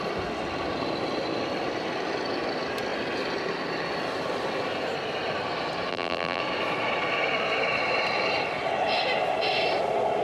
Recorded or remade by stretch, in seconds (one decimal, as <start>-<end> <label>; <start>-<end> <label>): 0.0-5.9 recorded; 5.9-6.4 remade; 6.4-10.2 recorded